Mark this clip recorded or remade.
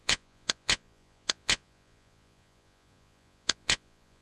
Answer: remade